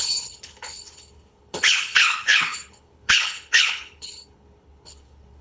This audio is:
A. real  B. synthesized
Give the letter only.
B